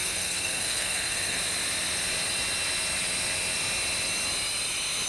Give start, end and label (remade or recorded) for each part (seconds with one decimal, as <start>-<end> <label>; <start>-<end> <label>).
0.0-1.4 remade; 1.4-5.1 recorded